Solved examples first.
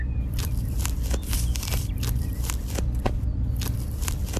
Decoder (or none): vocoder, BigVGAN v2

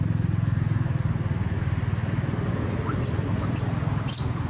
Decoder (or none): none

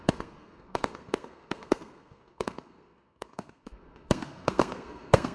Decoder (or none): codec, SNAC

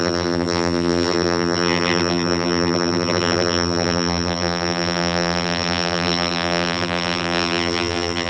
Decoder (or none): vocoder, BigVGAN v2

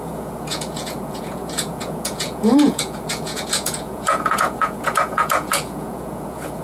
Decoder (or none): vocoder, Vocos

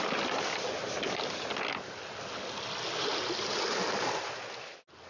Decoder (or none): none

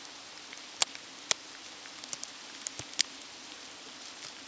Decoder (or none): none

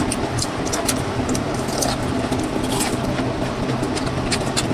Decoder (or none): none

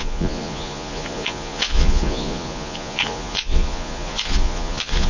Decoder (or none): vocoder, Vocos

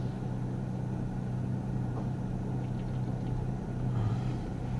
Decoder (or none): none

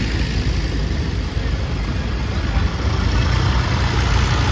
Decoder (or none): none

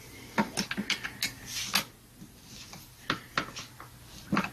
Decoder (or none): none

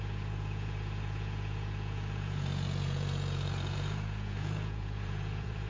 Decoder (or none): vocoder, Vocos